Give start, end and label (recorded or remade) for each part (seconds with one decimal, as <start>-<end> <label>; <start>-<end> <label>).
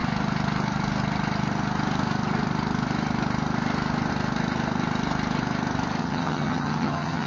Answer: 0.0-6.0 recorded; 6.0-7.3 remade